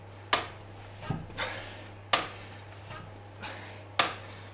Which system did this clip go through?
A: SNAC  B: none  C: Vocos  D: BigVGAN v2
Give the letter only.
B